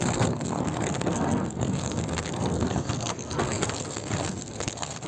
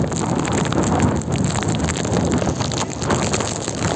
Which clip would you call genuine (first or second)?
second